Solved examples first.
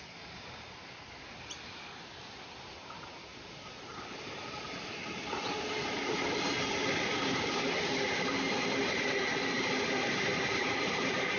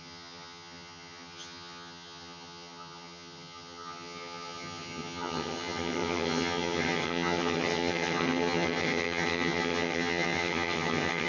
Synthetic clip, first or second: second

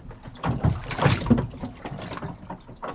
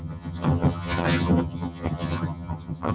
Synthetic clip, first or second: second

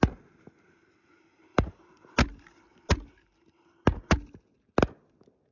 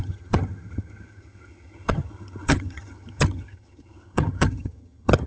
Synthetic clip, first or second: second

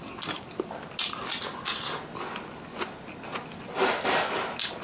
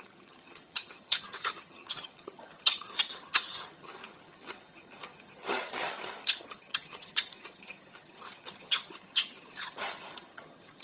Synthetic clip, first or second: second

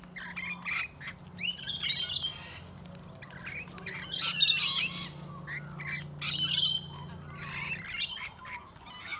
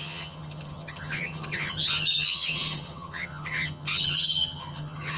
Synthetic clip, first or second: second